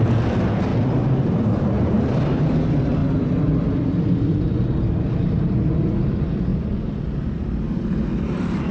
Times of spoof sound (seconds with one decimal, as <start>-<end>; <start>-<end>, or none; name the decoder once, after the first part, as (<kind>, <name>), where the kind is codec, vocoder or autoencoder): none